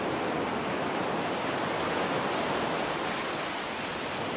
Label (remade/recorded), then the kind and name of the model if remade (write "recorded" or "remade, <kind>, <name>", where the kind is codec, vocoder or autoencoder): recorded